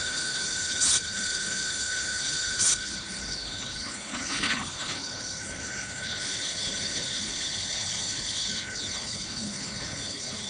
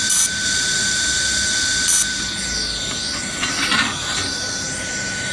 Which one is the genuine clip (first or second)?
second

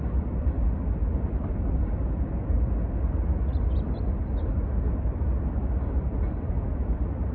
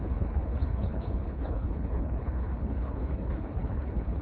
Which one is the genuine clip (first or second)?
first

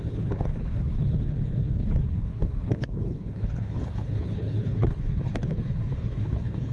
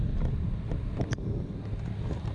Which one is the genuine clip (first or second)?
second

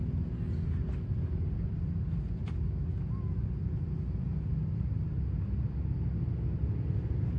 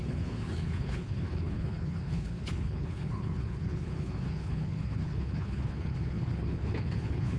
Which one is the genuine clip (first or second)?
first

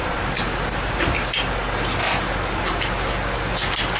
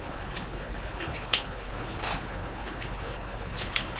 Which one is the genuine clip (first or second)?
first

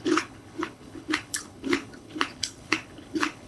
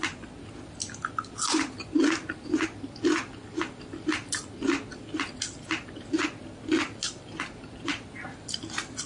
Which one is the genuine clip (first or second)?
second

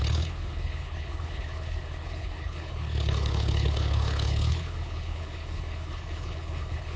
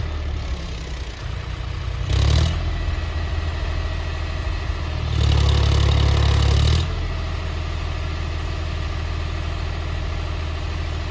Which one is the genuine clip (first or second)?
second